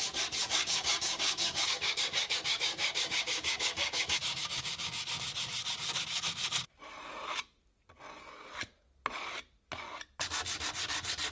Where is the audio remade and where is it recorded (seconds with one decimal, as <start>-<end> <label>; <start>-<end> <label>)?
0.0-0.4 recorded; 0.4-5.1 remade; 5.1-11.3 recorded

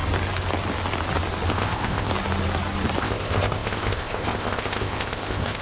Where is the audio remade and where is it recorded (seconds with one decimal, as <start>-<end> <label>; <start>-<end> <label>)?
0.0-1.5 recorded; 1.5-2.1 remade; 2.1-3.0 recorded; 3.0-5.6 remade

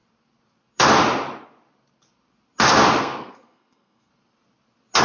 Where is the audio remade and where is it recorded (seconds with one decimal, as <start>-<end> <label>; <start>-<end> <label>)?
0.0-3.0 recorded; 3.0-4.1 remade; 4.1-5.0 recorded

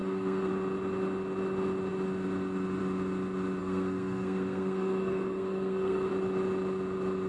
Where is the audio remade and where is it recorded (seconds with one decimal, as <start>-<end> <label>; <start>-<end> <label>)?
0.0-0.5 remade; 0.5-3.6 recorded; 3.6-6.1 remade; 6.1-7.3 recorded

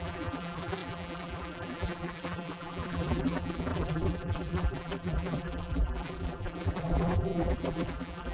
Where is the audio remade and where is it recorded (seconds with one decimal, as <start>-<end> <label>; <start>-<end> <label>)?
0.0-8.3 remade

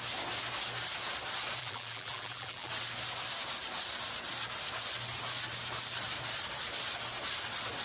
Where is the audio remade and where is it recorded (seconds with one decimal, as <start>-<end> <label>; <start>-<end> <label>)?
0.0-1.6 recorded; 1.6-2.7 remade; 2.7-7.8 recorded

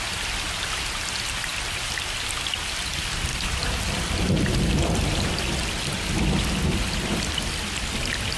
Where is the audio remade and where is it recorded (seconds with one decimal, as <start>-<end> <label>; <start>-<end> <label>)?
0.0-3.3 recorded; 3.3-6.9 remade; 6.9-8.4 recorded